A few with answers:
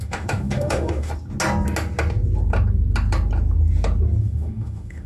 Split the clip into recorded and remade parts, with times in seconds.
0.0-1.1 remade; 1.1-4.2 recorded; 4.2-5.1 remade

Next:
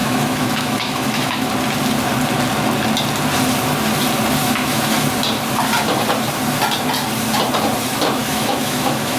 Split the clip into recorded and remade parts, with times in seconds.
0.0-1.5 remade; 1.5-4.4 recorded; 4.4-5.0 remade; 5.0-8.2 recorded; 8.2-9.2 remade

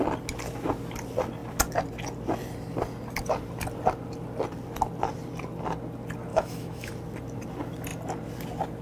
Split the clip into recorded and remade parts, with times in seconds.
0.0-6.3 recorded; 6.3-6.9 remade; 6.9-8.8 recorded

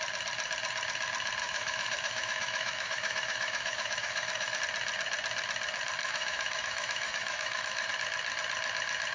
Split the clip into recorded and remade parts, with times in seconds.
0.0-1.4 recorded; 1.4-4.6 remade; 4.6-6.0 recorded; 6.0-7.9 remade; 7.9-9.1 recorded

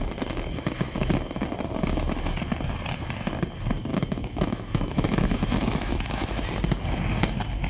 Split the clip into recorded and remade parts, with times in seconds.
0.0-3.9 recorded; 3.9-6.3 remade; 6.3-7.7 recorded

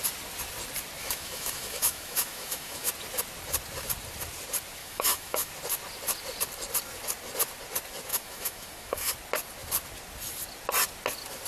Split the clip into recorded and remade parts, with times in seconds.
0.0-1.0 recorded; 1.0-2.9 remade; 2.9-4.8 recorded; 4.8-5.5 remade; 5.5-8.1 recorded; 8.1-9.1 remade; 9.1-11.5 recorded

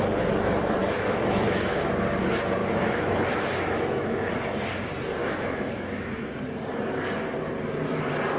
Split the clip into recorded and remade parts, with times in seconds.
0.0-0.8 recorded; 0.8-1.9 remade; 1.9-2.6 recorded; 2.6-4.3 remade; 4.3-5.2 recorded; 5.2-6.4 remade; 6.4-8.4 recorded